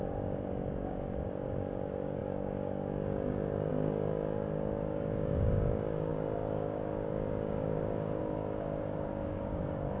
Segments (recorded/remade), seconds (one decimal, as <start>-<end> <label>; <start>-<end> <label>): 0.0-10.0 remade